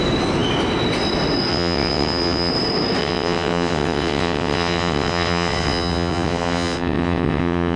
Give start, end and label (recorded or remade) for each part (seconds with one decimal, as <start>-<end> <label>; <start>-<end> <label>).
0.0-1.5 recorded; 1.5-2.5 remade; 2.5-3.0 recorded; 3.0-7.8 remade